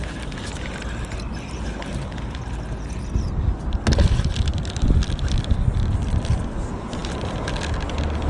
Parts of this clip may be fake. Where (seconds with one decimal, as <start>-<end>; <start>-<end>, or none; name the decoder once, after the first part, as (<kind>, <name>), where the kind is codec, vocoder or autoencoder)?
none

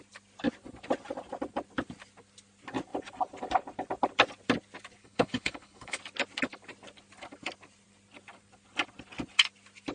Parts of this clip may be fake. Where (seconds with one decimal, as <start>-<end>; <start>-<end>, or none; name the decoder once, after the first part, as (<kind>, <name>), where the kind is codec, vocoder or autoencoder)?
5.0-6.0 (codec, HILCodec)

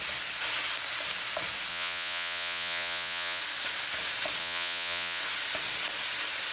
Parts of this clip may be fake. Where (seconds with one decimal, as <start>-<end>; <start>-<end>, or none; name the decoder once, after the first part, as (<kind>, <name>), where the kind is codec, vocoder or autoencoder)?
1.7-3.4 (vocoder, Vocos); 4.4-5.2